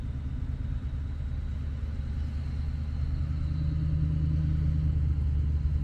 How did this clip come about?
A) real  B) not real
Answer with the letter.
A